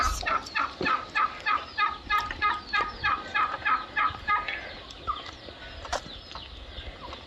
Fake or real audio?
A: real